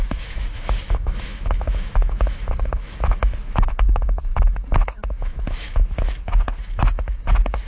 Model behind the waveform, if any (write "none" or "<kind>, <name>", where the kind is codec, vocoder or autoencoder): autoencoder, DAC-VAE